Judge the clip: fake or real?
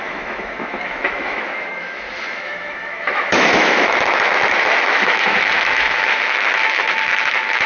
fake